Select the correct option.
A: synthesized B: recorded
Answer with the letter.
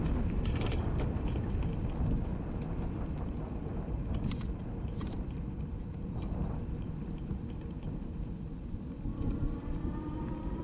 A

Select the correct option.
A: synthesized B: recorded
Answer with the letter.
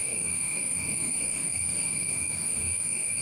A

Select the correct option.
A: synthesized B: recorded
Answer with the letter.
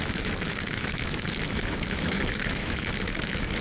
A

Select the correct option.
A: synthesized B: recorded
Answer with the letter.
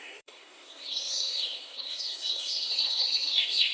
A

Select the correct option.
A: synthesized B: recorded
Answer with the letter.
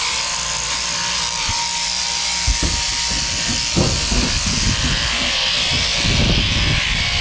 B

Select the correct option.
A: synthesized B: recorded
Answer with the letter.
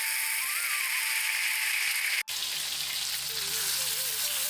B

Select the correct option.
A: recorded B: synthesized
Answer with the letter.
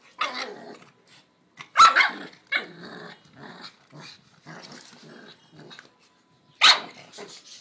A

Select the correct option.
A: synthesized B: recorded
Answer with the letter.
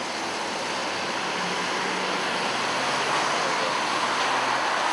B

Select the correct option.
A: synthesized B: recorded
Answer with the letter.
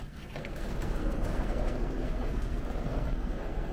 A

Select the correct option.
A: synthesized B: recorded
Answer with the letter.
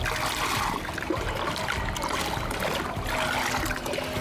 B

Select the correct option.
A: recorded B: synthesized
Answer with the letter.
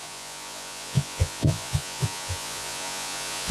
B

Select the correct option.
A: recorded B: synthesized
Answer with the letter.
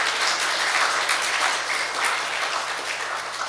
A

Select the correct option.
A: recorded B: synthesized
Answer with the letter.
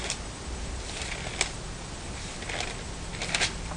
A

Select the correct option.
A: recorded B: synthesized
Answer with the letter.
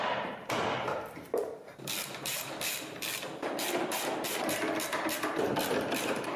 B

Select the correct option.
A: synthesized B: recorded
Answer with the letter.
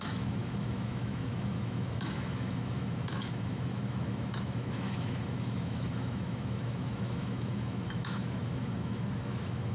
A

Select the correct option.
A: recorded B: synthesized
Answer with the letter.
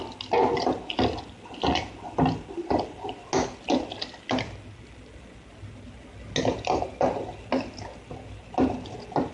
A